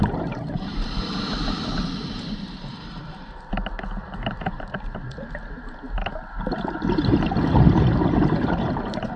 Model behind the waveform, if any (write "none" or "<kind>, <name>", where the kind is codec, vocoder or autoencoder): vocoder, BigVGAN v2